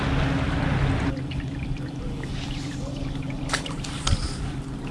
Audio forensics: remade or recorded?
recorded